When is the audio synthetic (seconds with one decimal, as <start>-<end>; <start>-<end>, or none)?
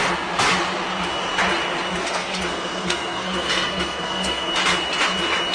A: 2.0-4.5